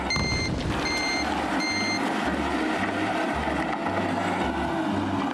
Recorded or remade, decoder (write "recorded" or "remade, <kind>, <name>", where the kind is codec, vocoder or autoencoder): recorded